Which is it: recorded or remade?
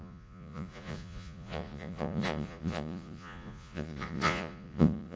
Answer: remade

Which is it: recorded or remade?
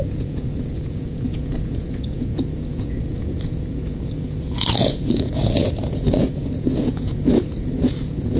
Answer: remade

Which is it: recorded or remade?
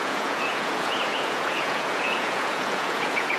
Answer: remade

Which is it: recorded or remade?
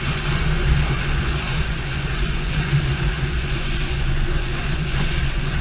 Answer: remade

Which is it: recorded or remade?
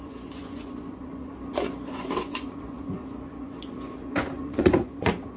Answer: remade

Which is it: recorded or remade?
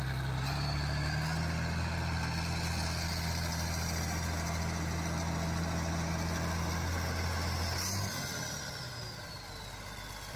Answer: recorded